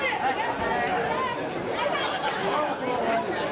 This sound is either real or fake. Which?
real